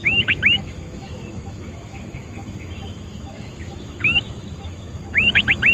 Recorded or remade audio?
remade